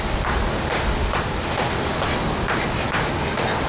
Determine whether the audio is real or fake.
real